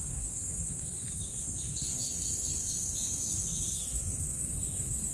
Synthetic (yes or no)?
yes